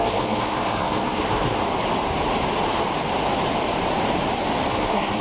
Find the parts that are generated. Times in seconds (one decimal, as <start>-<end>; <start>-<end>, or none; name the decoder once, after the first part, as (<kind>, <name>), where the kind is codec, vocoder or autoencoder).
0.0-1.6 (codec, SNAC); 4.7-5.2

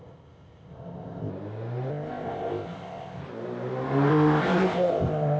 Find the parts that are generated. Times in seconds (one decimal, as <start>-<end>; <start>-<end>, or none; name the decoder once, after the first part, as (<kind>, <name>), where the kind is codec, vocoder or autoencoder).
0.0-1.3 (codec, ZipCodec); 1.9-3.2; 4.1-5.4

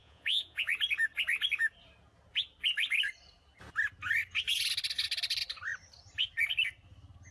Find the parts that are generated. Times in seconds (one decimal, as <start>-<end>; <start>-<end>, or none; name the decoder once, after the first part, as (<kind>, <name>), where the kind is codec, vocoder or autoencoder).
0.0-0.7 (vocoder, Vocos)

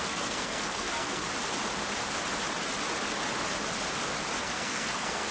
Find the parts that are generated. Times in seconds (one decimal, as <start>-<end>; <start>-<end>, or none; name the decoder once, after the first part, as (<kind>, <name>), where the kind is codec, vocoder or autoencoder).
0.0-1.2 (codec, SNAC); 4.4-5.3

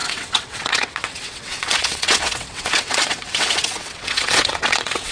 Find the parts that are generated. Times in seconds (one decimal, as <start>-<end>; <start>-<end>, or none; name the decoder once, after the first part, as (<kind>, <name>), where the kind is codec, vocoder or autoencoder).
0.0-5.1 (vocoder, WaveNeXt)

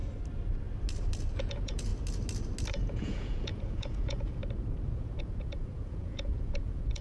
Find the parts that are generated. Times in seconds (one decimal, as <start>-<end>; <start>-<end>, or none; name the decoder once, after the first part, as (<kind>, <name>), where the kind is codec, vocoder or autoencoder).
1.4-1.9 (vocoder, Vocos); 2.7-4.4; 4.9-7.0

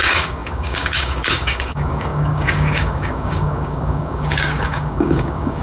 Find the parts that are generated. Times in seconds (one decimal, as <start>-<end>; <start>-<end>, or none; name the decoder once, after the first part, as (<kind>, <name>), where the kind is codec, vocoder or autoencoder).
0.0-5.6 (codec, DAC)

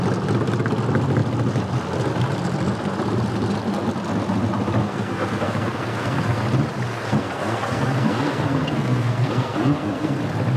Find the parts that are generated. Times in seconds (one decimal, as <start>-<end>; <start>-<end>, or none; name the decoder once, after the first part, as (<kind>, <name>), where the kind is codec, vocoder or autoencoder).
4.8-6.4 (codec, SNAC); 6.9-10.2